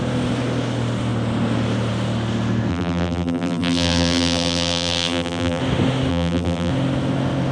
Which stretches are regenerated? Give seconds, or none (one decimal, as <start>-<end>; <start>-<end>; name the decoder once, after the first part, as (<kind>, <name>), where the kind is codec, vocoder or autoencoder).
2.7-5.6 (vocoder, BigVGAN v2); 6.1-6.7